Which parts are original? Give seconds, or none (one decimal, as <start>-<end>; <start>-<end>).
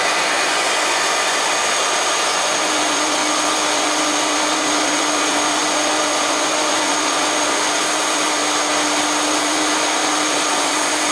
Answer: 1.5-2.2; 8.4-9.3